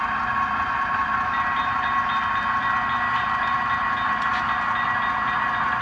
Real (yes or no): yes